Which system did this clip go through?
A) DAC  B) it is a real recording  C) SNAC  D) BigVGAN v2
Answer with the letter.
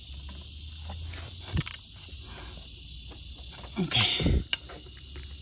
B